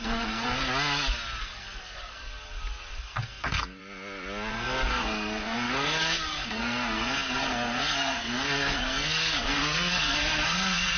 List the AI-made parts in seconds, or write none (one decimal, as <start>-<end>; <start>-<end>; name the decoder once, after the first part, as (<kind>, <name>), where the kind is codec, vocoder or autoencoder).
0.0-0.7 (codec, SNAC); 1.4-2.3; 3.0-3.8; 4.5-11.0